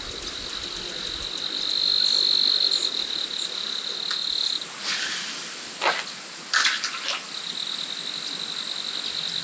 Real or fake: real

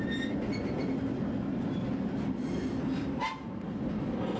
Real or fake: real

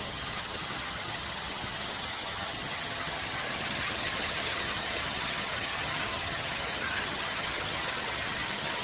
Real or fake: fake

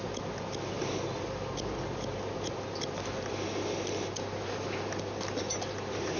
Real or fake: real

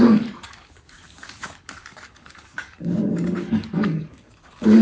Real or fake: fake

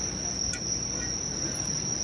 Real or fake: real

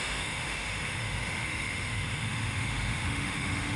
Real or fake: fake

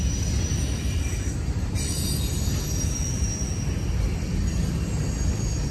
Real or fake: real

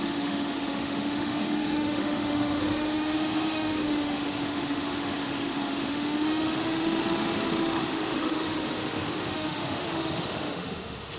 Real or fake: fake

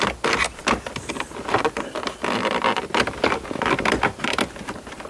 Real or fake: real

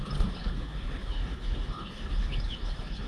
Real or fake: fake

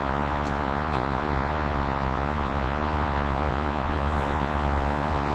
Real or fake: fake